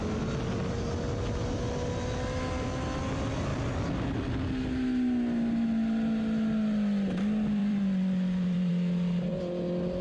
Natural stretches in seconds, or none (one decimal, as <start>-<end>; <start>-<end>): 0.0-3.5; 4.3-7.6; 8.7-10.0

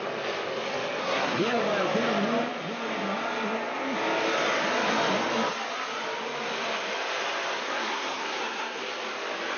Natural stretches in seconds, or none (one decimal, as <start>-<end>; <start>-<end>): 0.0-1.0; 1.6-7.6; 8.8-9.6